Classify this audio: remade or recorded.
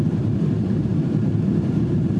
remade